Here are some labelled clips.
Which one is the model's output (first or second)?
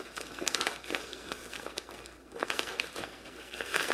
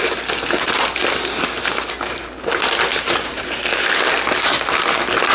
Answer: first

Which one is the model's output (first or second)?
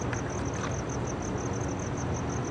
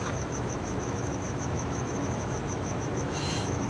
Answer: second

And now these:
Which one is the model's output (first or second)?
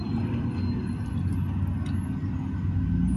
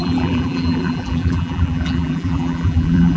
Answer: second